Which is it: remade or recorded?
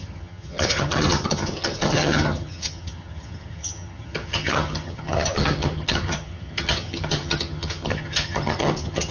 remade